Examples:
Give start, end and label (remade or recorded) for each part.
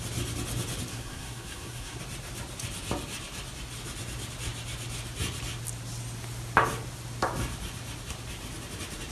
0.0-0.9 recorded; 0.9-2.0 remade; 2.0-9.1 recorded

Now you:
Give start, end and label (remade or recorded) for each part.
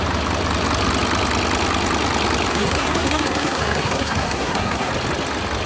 0.0-2.5 recorded; 2.5-4.9 remade; 4.9-5.7 recorded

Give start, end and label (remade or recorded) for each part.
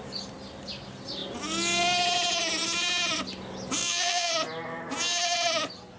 0.0-3.8 recorded; 3.8-4.3 remade; 4.3-6.0 recorded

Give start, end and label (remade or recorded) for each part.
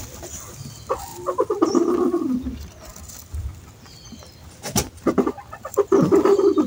0.0-6.7 recorded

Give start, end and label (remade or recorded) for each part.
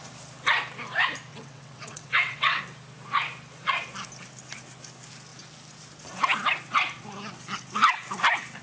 0.0-1.3 recorded; 1.3-2.6 remade; 2.6-8.6 recorded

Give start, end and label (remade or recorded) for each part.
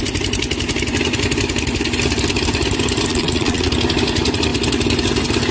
0.0-3.1 recorded; 3.1-3.7 remade; 3.7-5.5 recorded